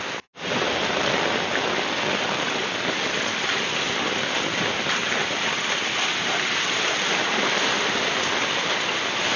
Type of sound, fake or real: fake